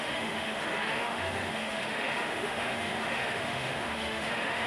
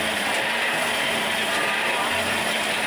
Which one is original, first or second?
second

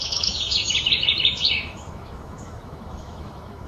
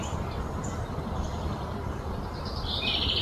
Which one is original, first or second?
second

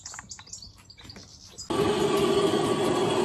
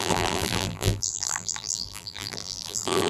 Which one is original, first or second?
first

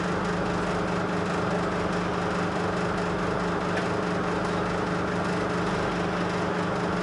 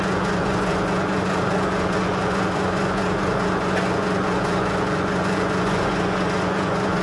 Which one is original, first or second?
first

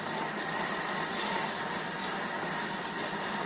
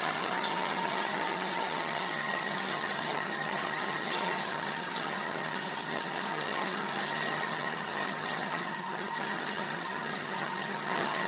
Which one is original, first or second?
first